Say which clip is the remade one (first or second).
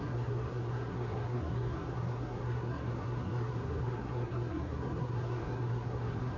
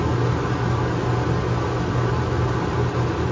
first